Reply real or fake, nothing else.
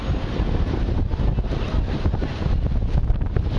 real